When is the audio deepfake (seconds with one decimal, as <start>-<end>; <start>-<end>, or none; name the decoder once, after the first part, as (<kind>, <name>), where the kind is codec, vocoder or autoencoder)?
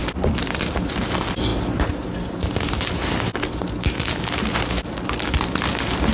none